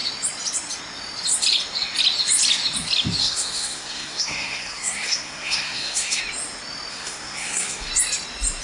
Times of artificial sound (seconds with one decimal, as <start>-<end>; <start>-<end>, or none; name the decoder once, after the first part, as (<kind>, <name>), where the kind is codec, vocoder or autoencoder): 3.2-6.2 (codec, SNAC); 6.9-7.9